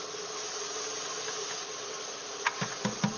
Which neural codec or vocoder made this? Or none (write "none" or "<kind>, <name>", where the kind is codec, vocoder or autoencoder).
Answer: none